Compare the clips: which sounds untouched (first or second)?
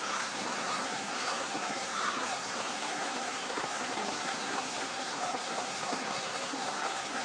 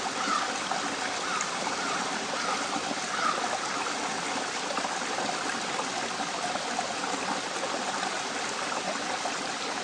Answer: second